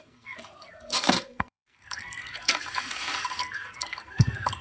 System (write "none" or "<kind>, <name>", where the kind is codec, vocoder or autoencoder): codec, SNAC